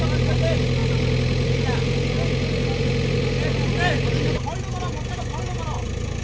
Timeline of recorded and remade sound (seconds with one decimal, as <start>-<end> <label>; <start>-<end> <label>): 0.0-6.2 recorded